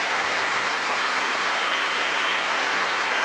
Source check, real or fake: fake